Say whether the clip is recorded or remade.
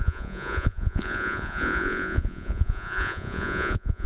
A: remade